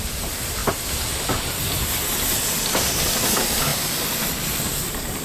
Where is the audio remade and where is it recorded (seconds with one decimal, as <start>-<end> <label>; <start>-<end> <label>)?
0.0-0.6 remade; 0.6-3.2 recorded; 3.2-5.2 remade